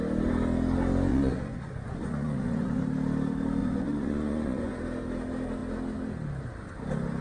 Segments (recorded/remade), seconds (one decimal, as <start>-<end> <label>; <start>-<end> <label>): 0.0-1.1 recorded; 1.1-2.8 remade; 2.8-3.6 recorded; 3.6-4.7 remade; 4.7-7.2 recorded